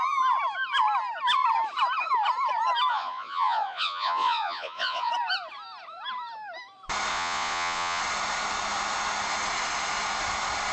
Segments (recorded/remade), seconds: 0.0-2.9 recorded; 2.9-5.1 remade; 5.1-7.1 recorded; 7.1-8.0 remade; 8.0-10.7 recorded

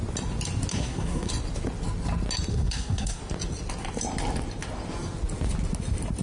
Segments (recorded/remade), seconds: 0.0-0.7 recorded; 0.7-1.3 remade; 1.3-2.5 recorded; 2.5-3.2 remade; 3.2-6.2 recorded

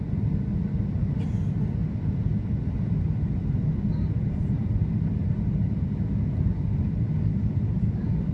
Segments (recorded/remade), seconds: 0.0-8.3 recorded

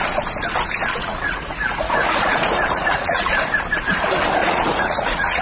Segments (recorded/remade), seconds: 0.0-1.0 recorded; 1.0-3.3 remade; 3.3-4.4 recorded; 4.4-5.4 remade